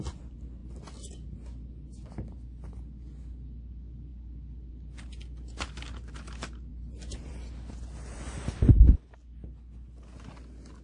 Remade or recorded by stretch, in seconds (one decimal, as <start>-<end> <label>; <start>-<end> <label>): 0.0-6.7 recorded; 6.7-7.3 remade; 7.3-10.8 recorded